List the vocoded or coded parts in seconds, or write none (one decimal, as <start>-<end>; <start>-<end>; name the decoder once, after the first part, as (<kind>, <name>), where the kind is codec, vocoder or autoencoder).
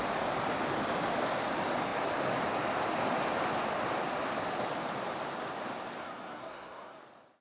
6.0-7.0 (codec, SNAC)